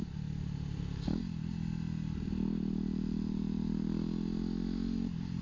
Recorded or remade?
recorded